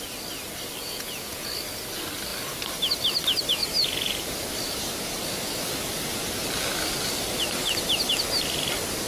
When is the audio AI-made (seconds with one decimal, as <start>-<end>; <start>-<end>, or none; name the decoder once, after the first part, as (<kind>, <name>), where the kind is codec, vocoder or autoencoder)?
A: 0.8-1.5 (vocoder, Vocos)

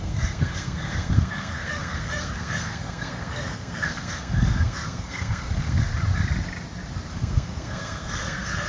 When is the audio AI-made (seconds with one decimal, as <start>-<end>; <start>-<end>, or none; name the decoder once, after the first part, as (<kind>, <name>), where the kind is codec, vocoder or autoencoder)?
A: 0.0-5.9 (codec, SNAC); 7.1-8.7

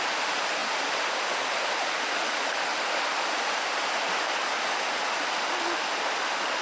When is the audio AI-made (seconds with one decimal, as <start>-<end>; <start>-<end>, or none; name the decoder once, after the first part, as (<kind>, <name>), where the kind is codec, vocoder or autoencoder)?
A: none

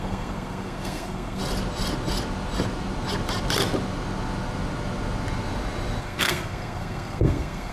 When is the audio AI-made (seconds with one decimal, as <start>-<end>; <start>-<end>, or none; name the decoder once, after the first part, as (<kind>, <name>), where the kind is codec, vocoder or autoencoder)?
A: 0.0-1.4 (codec, SNAC); 6.0-7.7

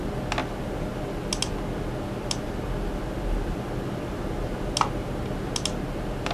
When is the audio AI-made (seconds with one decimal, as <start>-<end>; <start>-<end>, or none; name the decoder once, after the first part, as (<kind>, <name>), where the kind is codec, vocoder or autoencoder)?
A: none

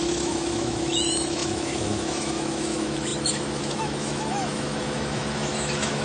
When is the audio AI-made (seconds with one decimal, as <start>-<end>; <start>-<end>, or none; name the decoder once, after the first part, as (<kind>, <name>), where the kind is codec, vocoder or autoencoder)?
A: 0.0-6.0 (autoencoder, DAC-VAE)

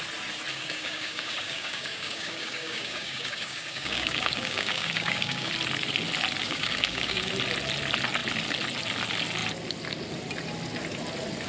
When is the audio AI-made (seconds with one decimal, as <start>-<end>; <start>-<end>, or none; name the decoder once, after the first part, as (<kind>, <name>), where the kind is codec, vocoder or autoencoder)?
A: 0.5-5.5 (codec, DAC); 6.4-7.3